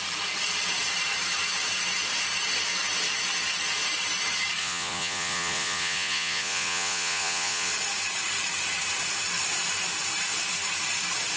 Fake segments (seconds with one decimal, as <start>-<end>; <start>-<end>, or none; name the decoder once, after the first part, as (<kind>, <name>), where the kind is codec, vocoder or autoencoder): 4.6-7.7 (vocoder, Vocos)